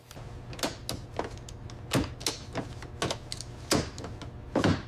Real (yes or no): yes